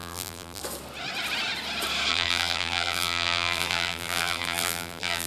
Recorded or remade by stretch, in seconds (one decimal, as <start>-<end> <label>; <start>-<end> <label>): 0.0-0.6 remade; 0.6-2.1 recorded; 2.1-5.3 remade

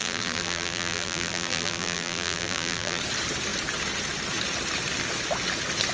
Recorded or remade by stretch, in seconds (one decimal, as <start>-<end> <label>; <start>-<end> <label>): 0.0-3.0 remade; 3.0-5.9 recorded

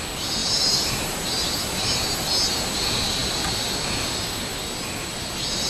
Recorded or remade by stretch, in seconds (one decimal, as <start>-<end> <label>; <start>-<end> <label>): 0.0-3.2 recorded; 3.2-4.3 remade; 4.3-5.7 recorded

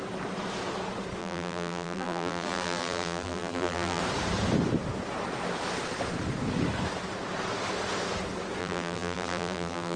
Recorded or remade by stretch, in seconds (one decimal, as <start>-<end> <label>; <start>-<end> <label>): 0.0-1.2 recorded; 1.2-4.0 remade; 4.0-8.6 recorded; 8.6-10.0 remade

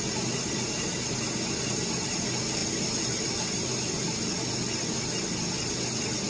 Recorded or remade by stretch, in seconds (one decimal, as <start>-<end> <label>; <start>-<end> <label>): 0.0-6.3 recorded

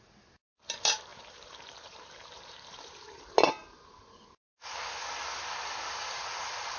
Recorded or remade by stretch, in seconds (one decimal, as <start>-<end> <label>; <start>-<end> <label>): 0.0-1.1 recorded; 1.1-3.2 remade; 3.2-6.8 recorded